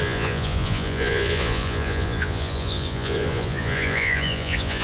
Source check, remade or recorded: remade